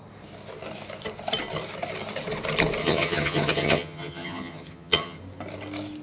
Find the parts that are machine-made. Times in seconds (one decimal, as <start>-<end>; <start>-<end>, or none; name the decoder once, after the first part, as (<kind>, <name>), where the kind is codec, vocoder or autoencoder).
2.8-5.2 (vocoder, HiFi-GAN)